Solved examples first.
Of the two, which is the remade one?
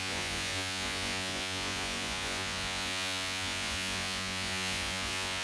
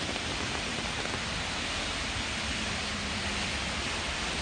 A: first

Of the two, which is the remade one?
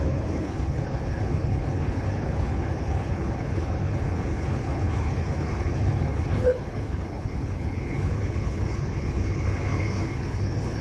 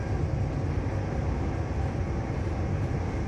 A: first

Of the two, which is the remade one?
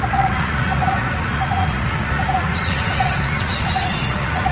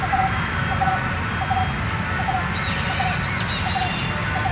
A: first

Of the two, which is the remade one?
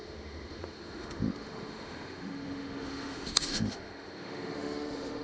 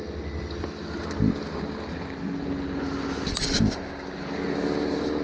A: first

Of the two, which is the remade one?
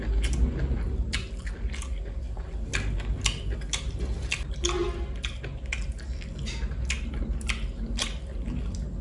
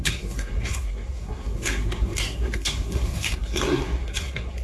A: second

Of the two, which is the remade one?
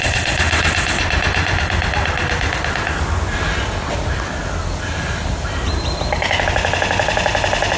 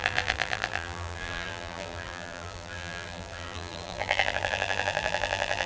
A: second